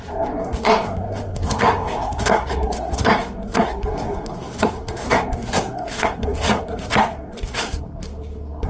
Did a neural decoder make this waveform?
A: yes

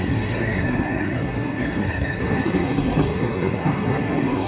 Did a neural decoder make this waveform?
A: yes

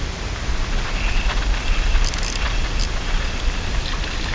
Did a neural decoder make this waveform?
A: no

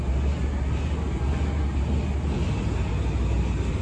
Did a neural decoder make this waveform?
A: no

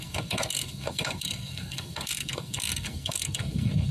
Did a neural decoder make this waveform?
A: yes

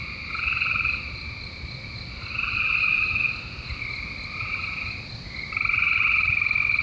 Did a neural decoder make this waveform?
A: no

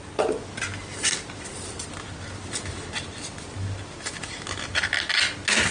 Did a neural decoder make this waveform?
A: no